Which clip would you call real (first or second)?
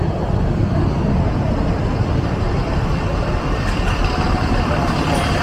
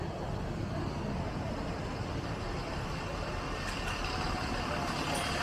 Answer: second